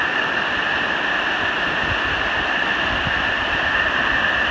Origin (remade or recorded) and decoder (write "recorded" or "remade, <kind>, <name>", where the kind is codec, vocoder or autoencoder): recorded